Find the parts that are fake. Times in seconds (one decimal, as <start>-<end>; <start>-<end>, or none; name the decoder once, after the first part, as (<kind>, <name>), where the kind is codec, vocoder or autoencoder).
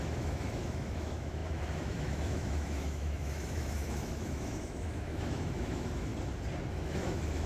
0.0-6.1 (autoencoder, DAC-VAE); 6.7-7.5